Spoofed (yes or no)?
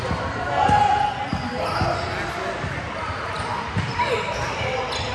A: no